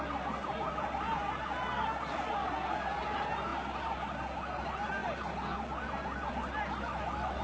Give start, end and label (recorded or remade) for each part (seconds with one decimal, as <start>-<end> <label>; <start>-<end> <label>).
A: 0.0-6.9 recorded; 6.9-7.4 remade

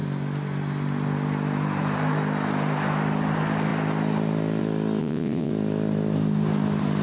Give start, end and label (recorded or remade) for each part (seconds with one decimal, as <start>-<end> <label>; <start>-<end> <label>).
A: 0.0-5.0 recorded; 5.0-5.5 remade; 5.5-7.0 recorded

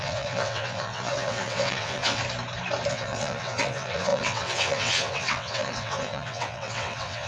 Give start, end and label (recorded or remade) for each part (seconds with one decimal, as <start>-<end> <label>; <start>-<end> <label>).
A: 0.0-2.2 remade; 2.2-2.9 recorded; 2.9-7.3 remade

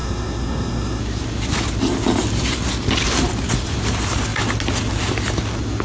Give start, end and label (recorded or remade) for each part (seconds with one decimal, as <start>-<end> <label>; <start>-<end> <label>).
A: 0.0-1.0 remade; 1.0-5.8 recorded

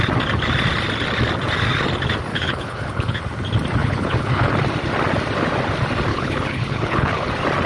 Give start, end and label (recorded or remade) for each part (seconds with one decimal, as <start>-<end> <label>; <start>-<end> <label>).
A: 0.0-2.3 recorded; 2.3-3.2 remade; 3.2-3.8 recorded; 3.8-4.5 remade; 4.5-6.1 recorded; 6.1-7.3 remade; 7.3-7.7 recorded

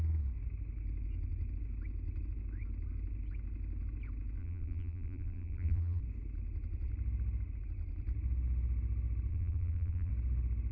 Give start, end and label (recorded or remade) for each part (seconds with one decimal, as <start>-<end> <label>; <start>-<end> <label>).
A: 0.0-4.4 recorded; 4.4-6.0 remade; 6.0-9.3 recorded; 9.3-10.1 remade; 10.1-10.7 recorded

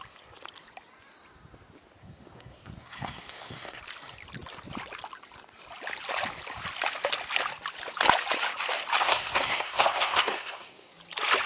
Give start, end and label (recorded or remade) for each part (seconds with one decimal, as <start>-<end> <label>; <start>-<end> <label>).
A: 0.0-2.0 recorded; 2.0-3.8 remade; 3.8-9.0 recorded; 9.0-10.9 remade; 10.9-11.5 recorded